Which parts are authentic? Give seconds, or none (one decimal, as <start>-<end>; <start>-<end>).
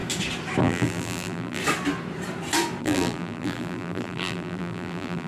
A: 0.0-0.6; 1.6-2.8